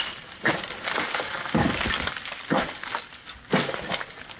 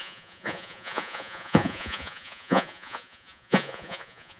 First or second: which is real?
first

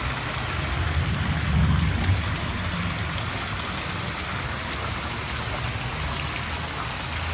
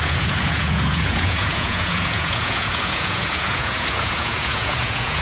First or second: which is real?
first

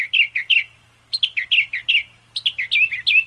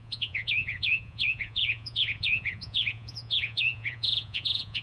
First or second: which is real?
first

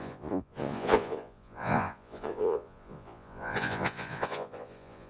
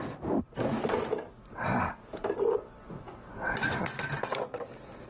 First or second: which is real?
second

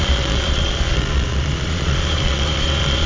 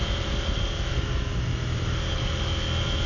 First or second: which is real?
second